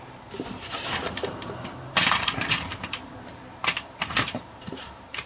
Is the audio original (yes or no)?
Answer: no